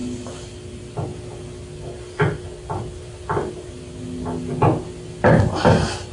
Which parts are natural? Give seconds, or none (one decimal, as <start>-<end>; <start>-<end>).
0.0-6.1